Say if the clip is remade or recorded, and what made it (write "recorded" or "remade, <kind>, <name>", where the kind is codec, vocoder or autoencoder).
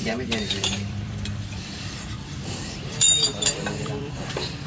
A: remade, vocoder, BigVGAN v2